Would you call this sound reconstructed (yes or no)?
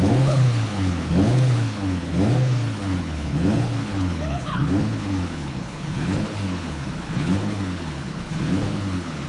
yes